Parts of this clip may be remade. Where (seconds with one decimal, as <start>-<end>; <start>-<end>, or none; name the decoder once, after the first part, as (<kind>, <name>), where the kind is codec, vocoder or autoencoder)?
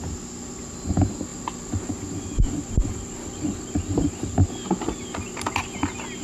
1.3-4.5 (vocoder, BigVGAN v2)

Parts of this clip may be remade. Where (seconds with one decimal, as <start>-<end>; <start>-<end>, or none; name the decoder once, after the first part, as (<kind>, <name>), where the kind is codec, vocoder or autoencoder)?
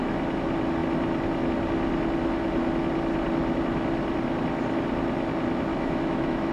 5.7-6.5 (autoencoder, DAC-VAE)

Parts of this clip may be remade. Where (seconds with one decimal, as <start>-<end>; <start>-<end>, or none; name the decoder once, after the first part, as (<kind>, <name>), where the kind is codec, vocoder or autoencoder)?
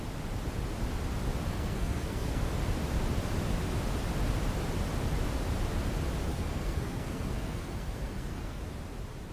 1.5-2.5 (codec, SNAC); 6.3-8.6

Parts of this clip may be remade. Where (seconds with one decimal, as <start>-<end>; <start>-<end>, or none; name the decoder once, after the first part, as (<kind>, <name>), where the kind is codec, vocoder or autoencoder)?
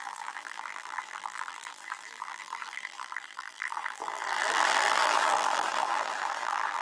0.0-6.8 (vocoder, BigVGAN v2)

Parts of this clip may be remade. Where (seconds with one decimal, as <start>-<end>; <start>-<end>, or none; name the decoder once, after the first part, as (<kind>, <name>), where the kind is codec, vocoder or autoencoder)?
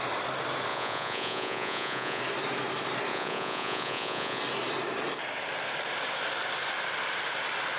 0.7-2.2 (vocoder, Vocos); 3.1-4.4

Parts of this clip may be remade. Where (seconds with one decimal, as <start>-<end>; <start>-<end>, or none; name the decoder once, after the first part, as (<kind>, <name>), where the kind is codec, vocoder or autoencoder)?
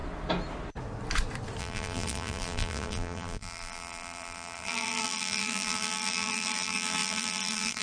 1.6-7.8 (vocoder, BigVGAN v2)